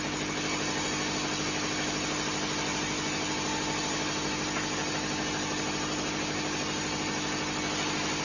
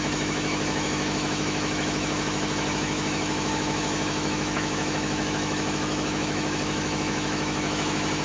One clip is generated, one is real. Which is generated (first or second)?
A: second